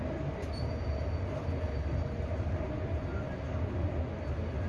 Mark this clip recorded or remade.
recorded